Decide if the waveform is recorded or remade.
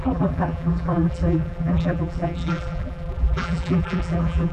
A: remade